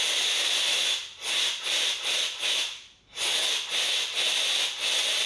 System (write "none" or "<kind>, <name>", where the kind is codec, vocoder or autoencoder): none